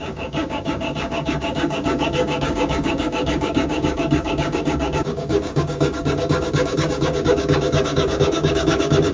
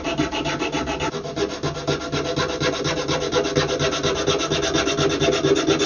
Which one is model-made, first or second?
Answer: first